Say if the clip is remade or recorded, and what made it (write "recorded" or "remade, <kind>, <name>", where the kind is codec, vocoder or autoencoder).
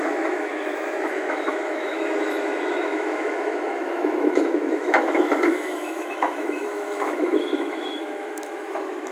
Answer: remade, autoencoder, DAC-VAE